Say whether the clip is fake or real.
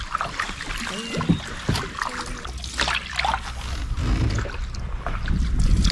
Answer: real